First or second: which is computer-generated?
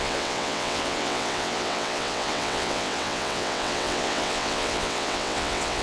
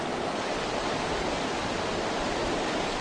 first